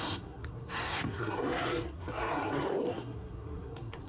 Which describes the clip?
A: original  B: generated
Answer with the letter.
B